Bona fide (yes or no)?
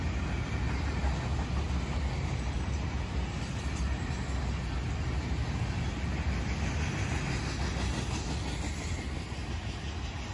yes